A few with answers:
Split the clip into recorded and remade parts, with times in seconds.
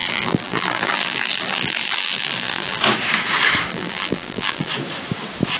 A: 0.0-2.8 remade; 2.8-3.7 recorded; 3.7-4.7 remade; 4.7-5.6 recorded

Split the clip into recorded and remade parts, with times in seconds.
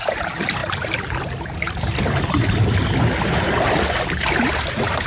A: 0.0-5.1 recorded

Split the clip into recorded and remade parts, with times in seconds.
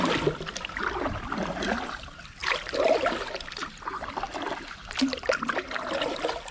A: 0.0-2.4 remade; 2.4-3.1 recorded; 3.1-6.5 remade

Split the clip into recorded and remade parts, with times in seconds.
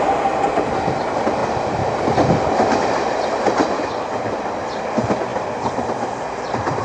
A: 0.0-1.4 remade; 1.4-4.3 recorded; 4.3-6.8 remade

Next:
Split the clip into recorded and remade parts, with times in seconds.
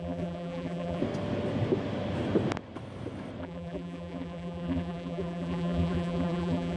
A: 0.0-1.0 remade; 1.0-3.4 recorded; 3.4-6.8 remade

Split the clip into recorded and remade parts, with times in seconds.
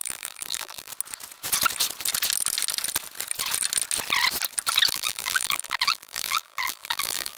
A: 0.0-0.9 remade; 0.9-4.9 recorded; 4.9-7.4 remade